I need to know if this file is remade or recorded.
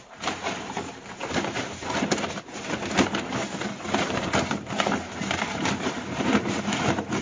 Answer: remade